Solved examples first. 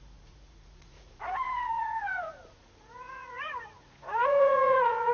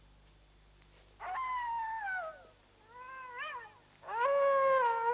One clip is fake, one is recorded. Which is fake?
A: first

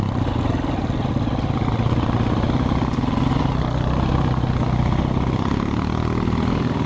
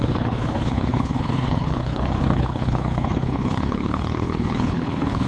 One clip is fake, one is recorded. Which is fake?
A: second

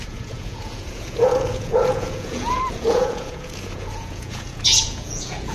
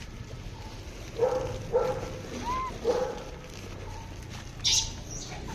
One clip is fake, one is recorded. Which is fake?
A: first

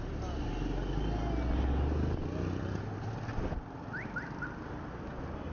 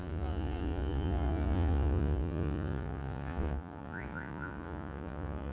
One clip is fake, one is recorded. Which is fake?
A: second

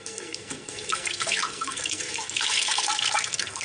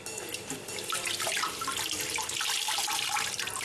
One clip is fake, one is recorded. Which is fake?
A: first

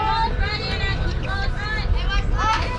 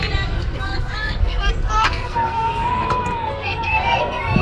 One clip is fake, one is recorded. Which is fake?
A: second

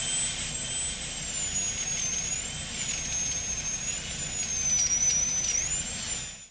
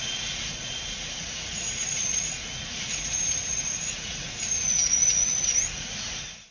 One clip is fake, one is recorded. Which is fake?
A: second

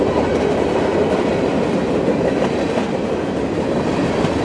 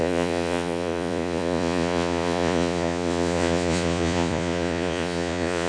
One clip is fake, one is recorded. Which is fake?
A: second